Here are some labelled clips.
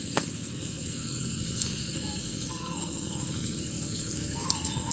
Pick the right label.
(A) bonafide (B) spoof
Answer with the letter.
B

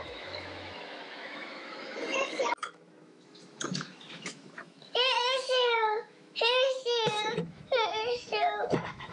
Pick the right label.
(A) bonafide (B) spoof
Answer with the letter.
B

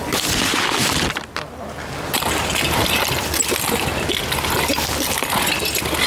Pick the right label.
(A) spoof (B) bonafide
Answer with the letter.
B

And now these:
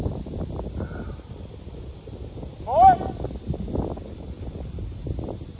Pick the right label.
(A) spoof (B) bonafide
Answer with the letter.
B